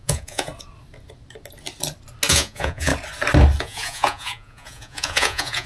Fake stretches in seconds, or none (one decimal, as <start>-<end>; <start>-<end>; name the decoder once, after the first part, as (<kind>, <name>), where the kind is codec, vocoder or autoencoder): 0.0-0.5 (vocoder, Vocos); 2.3-2.9; 3.6-5.7